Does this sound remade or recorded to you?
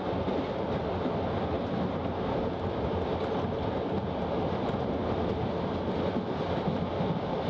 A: recorded